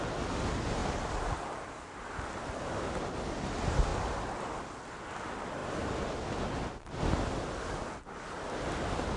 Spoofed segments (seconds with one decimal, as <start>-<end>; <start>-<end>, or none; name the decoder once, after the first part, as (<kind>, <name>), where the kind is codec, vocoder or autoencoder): 0.8-2.6 (vocoder, BigVGAN v2)